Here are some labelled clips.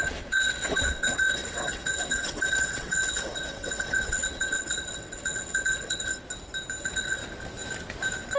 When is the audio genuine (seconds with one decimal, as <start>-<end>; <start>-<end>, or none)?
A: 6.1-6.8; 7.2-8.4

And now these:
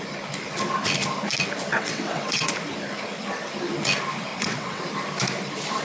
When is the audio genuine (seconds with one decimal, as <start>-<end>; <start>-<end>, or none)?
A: 0.0-1.7; 2.5-4.3; 4.8-5.8

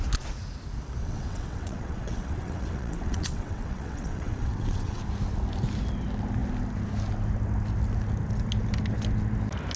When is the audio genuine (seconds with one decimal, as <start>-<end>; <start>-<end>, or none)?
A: 0.0-1.0; 5.0-9.8

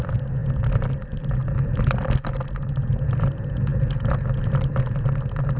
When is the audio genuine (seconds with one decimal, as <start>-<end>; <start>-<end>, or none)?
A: 0.0-5.6

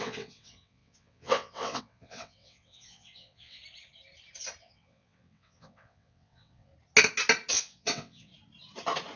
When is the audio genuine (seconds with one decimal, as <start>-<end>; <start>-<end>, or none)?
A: 3.6-4.6; 6.7-7.5; 8.3-9.2

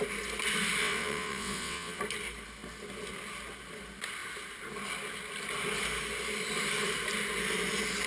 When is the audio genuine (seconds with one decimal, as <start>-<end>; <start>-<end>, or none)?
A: 0.0-0.8; 2.0-8.1